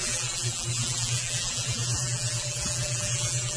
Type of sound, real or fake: fake